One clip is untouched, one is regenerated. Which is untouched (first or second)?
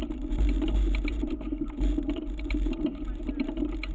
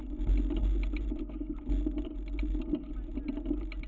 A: second